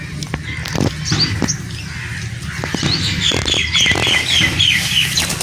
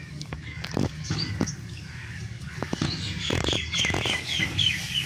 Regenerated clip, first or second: second